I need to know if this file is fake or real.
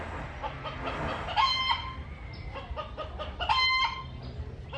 real